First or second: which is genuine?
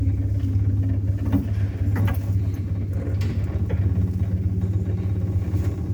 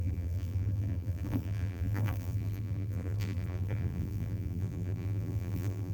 first